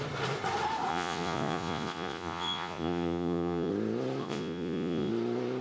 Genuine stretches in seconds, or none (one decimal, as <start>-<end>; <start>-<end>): 0.0-0.9; 3.7-4.2; 5.1-5.6